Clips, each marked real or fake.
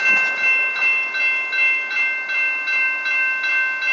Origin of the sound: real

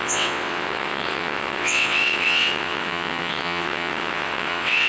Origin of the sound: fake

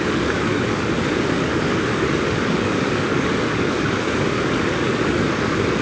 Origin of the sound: fake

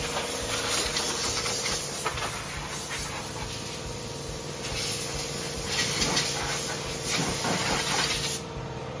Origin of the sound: real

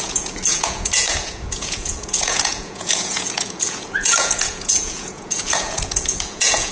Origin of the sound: fake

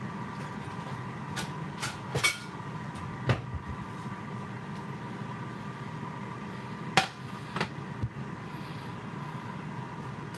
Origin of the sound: real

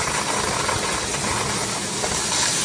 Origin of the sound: real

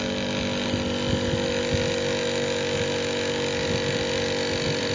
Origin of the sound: real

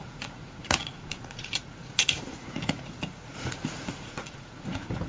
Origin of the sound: fake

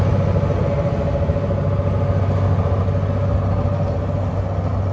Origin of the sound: real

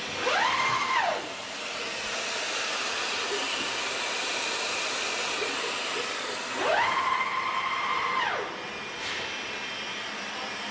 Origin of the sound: real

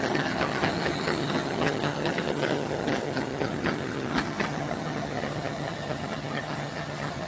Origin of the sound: fake